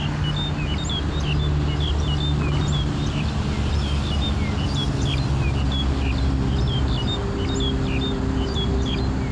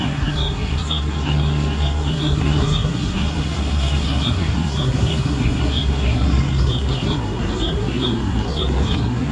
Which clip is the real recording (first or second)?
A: first